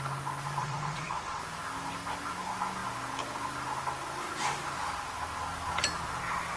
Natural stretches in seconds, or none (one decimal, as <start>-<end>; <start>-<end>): 0.0-0.6; 1.4-6.6